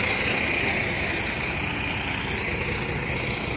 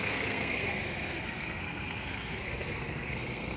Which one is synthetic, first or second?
second